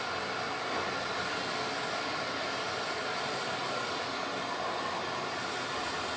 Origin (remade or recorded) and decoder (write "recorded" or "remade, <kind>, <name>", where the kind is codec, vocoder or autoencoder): recorded